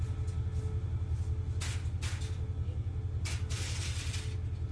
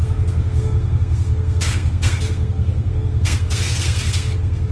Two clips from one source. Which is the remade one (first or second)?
second